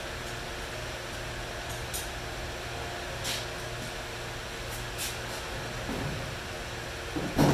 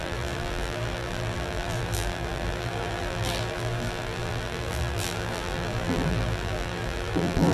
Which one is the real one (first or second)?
first